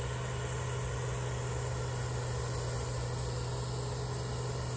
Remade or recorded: recorded